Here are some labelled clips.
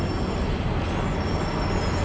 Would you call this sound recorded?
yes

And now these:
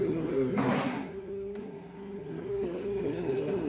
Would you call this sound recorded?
no